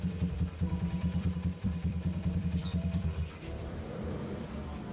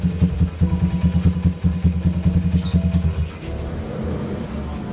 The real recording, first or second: second